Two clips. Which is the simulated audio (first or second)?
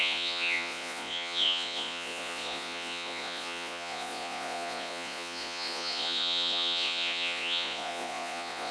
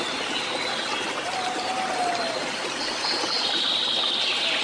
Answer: first